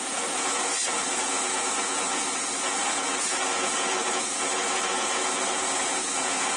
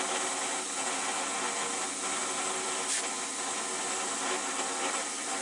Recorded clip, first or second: second